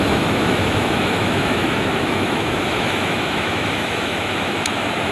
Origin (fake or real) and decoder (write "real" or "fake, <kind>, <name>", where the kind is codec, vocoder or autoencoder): fake, autoencoder, DAC-VAE